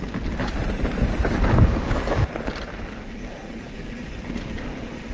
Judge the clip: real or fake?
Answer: real